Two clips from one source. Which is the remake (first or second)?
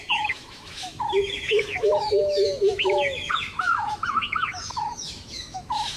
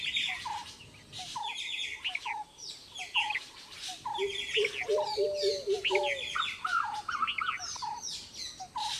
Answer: first